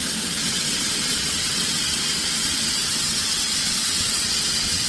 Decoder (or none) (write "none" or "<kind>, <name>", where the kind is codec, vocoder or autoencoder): vocoder, WaveNeXt